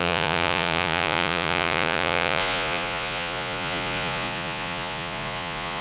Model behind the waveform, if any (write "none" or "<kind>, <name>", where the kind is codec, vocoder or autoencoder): vocoder, Vocos